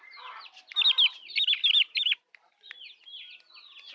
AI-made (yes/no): no